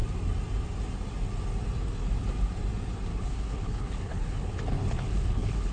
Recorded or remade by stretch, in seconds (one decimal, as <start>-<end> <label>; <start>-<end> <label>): 0.0-3.1 recorded; 3.1-5.7 remade